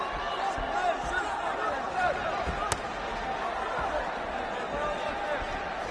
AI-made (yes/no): no